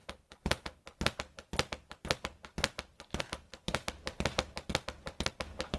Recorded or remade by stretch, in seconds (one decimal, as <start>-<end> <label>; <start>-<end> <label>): 0.0-5.8 recorded